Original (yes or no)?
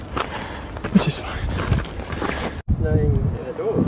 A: yes